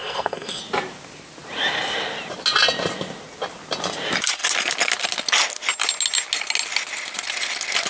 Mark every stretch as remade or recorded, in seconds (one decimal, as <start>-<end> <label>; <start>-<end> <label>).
0.0-0.6 remade; 0.6-7.9 recorded